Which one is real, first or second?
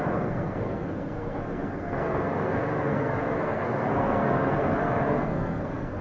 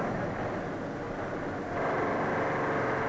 second